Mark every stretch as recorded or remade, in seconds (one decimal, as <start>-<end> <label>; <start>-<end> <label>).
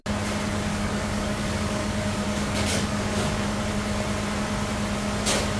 0.0-0.7 recorded; 0.7-3.6 remade; 3.6-5.6 recorded